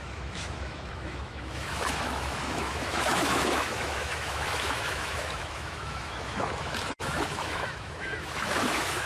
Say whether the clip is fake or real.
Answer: fake